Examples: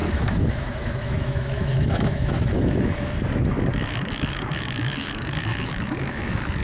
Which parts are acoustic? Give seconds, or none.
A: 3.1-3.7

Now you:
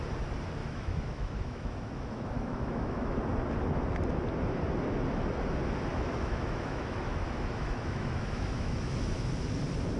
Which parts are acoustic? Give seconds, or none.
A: 0.0-0.6; 3.2-5.9; 9.3-10.0

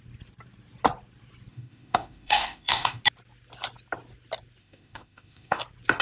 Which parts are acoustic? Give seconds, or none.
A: 0.0-1.5; 3.0-4.6; 5.6-6.0

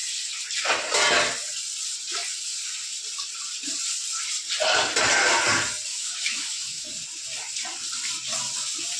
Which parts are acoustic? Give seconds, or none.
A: 0.0-5.9; 6.9-9.0

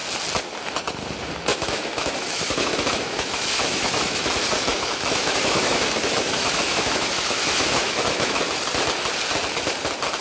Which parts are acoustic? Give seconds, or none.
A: 0.0-1.5; 4.3-4.7; 8.4-10.2